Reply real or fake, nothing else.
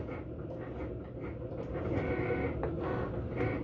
real